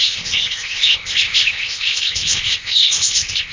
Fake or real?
fake